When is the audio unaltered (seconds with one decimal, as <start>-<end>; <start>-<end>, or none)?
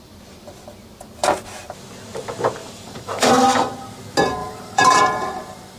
0.0-2.6; 3.3-4.4; 5.0-5.8